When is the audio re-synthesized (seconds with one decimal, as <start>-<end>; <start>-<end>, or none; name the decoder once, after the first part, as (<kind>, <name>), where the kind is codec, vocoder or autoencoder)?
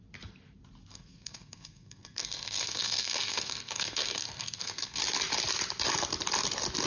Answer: 0.9-5.0 (codec, SNAC)